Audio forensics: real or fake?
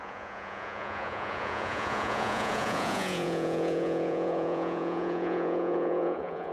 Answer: fake